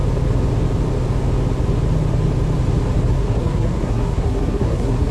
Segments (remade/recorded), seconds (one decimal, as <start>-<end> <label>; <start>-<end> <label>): 0.0-3.1 recorded; 3.1-5.1 remade

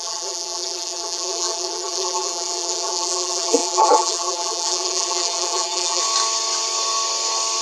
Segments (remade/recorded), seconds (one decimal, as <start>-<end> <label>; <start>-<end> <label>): 0.0-6.0 remade; 6.0-7.6 recorded

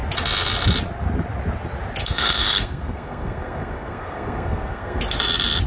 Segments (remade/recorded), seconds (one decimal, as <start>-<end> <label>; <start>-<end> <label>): 0.0-2.0 recorded; 2.0-5.0 remade; 5.0-5.7 recorded

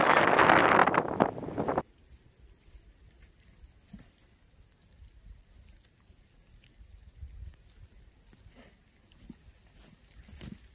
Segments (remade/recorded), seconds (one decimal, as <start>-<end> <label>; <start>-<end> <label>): 0.0-0.8 recorded; 0.8-1.8 remade; 1.8-10.7 recorded

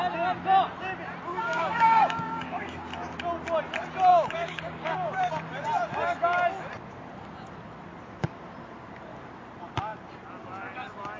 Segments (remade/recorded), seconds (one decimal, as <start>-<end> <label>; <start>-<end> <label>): 0.0-1.3 recorded; 1.3-2.8 remade; 2.8-4.1 recorded; 4.1-5.3 remade; 5.3-11.2 recorded

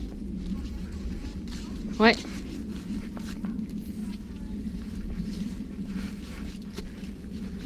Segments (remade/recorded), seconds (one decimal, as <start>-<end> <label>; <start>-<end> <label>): 0.0-2.7 recorded; 2.7-3.6 remade; 3.6-4.0 recorded; 4.0-6.8 remade; 6.8-7.7 recorded

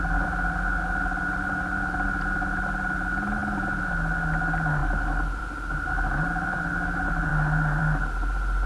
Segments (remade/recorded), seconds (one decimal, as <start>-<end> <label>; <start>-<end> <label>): 0.0-8.7 recorded